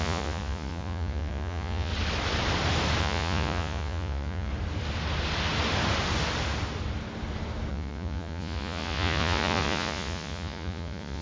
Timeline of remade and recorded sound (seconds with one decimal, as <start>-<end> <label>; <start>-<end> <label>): 0.0-1.9 remade; 1.9-3.0 recorded; 3.0-4.5 remade; 4.5-7.7 recorded; 7.7-11.2 remade